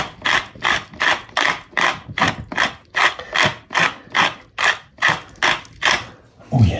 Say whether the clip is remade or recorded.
recorded